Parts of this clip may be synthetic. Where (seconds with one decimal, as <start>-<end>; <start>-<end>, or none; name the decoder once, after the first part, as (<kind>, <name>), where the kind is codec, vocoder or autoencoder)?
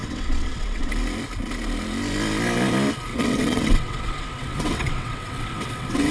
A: 0.0-0.9 (vocoder, WaveNeXt); 3.1-6.1